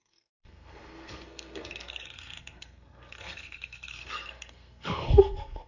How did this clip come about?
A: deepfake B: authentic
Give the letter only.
A